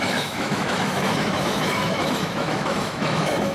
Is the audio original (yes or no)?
no